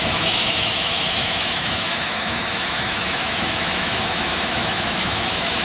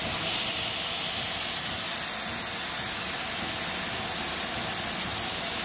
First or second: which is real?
second